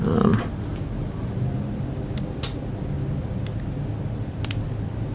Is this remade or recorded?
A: recorded